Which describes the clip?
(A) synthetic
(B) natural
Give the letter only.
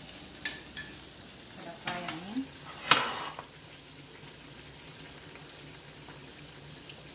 B